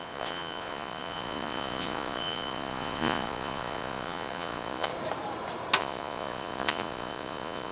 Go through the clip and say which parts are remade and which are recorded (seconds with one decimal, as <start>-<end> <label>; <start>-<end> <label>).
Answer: 0.0-4.9 remade; 4.9-5.8 recorded; 5.8-7.7 remade